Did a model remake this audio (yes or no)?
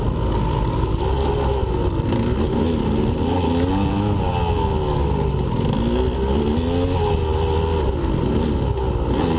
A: no